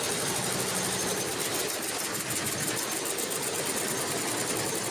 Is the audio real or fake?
real